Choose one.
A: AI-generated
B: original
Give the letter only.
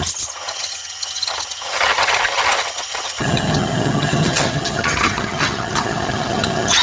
A